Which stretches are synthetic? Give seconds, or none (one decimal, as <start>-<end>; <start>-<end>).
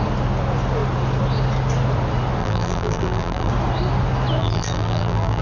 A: 2.4-3.5; 4.4-5.4